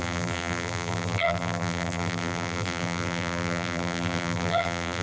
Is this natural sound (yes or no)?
no